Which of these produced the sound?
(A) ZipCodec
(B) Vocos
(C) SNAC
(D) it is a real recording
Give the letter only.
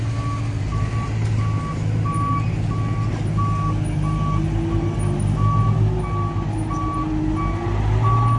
D